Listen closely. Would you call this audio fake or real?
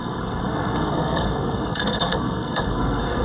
fake